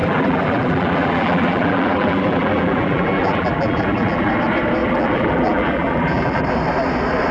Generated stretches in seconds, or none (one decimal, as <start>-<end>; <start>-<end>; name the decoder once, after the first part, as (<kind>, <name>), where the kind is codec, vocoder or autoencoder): 0.0-4.3 (vocoder, BigVGAN v2); 4.8-6.4